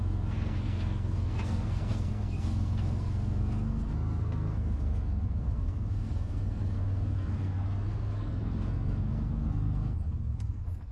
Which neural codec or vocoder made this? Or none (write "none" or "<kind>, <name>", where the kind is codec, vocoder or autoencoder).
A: codec, SNAC